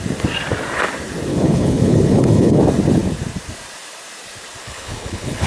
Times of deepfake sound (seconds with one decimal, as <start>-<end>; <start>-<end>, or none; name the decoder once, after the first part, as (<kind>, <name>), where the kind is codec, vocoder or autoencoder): 1.3-2.6 (codec, HILCodec); 4.6-5.5